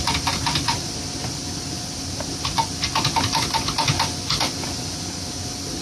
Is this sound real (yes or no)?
yes